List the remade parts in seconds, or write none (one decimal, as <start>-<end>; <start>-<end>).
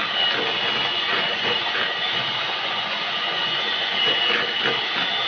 0.8-4.0